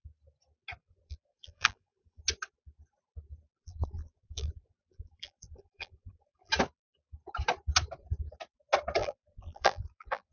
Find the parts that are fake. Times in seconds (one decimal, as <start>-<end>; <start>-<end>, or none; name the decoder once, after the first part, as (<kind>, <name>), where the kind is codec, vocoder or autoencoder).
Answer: 0.8-2.2 (vocoder, BigVGAN v2); 3.5-6.5; 9.0-10.3